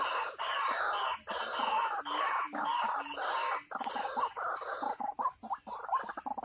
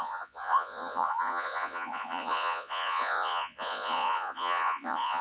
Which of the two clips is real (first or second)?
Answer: first